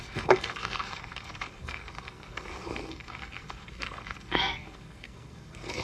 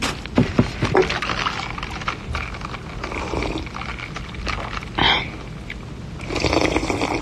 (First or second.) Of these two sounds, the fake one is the first